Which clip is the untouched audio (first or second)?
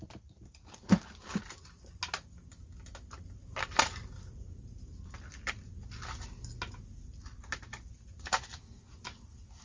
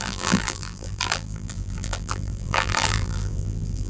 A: first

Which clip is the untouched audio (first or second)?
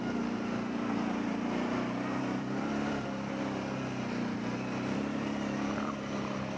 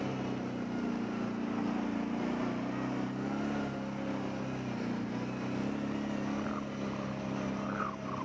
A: second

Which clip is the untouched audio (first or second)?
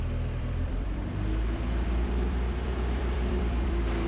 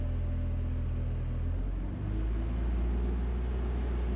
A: second